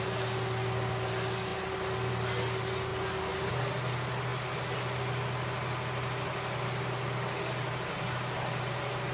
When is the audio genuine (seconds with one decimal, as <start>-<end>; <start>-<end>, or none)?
0.0-9.1